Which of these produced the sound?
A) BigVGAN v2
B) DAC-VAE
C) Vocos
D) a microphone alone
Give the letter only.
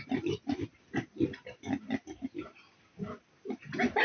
D